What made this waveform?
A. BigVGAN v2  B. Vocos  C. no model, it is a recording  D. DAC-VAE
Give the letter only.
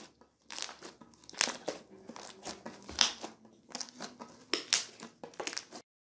C